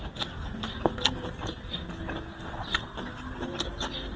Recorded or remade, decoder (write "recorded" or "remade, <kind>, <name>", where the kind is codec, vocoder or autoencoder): recorded